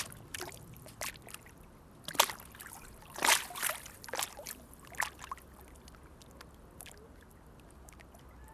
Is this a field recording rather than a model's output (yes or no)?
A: yes